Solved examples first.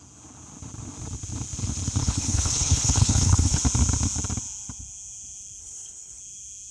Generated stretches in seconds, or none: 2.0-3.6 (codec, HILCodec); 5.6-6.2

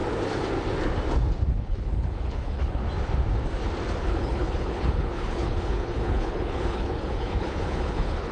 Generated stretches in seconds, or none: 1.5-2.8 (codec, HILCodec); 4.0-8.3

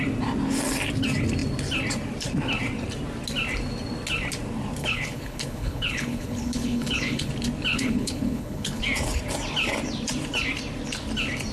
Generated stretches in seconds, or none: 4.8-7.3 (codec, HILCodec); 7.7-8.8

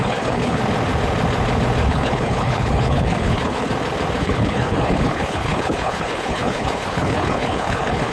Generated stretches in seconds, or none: 0.0-0.6 (codec, HILCodec); 1.9-3.7; 4.2-8.1

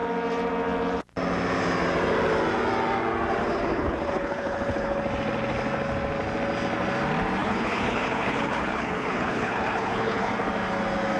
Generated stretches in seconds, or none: 3.4-5.0 (codec, HILCodec); 7.4-10.3

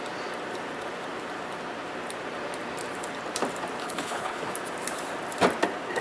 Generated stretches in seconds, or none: 3.8-4.4 (codec, HILCodec)